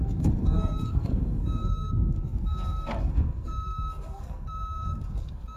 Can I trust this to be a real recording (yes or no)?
no